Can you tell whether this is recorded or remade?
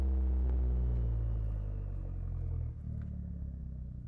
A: recorded